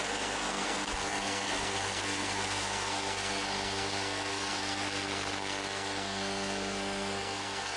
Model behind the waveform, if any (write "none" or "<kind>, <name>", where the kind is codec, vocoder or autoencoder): codec, SNAC